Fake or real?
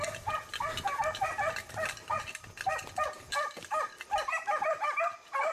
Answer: real